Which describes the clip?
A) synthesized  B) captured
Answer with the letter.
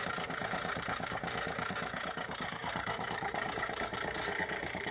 A